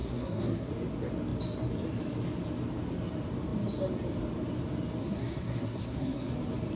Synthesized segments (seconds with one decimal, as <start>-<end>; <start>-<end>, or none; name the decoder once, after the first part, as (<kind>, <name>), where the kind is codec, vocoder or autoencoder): 0.0-0.7 (codec, SNAC); 5.0-6.3